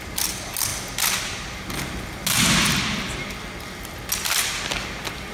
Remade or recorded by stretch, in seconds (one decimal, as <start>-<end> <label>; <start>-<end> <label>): 0.0-5.3 recorded